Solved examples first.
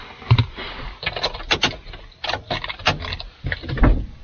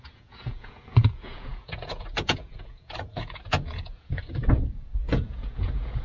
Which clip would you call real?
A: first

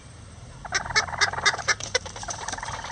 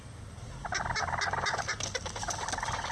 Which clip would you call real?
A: second